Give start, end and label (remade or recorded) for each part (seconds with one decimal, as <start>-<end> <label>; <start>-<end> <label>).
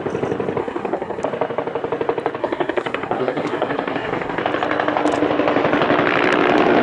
0.0-0.6 recorded; 0.6-1.2 remade; 1.2-2.4 recorded; 2.4-4.4 remade; 4.4-6.8 recorded